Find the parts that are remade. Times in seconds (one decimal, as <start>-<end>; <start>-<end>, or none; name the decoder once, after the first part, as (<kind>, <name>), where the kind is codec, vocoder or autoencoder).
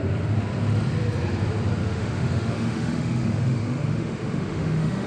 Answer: 1.8-5.1 (autoencoder, DAC-VAE)